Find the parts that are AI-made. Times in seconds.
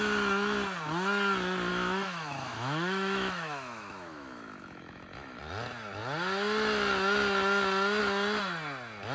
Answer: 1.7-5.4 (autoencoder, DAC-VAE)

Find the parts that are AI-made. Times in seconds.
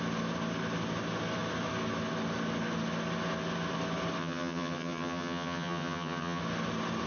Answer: 4.2-6.4 (vocoder, HiFi-GAN)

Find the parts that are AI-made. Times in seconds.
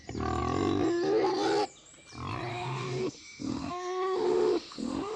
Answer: 2.5-5.2 (autoencoder, DAC-VAE)